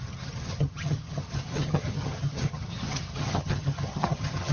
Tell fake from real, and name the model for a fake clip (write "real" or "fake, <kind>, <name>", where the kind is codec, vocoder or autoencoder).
fake, vocoder, HiFi-GAN